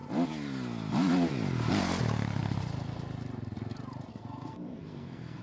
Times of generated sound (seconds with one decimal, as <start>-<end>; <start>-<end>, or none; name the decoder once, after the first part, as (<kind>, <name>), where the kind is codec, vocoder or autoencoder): 4.1-5.4 (codec, SNAC)